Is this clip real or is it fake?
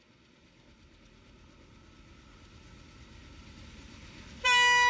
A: real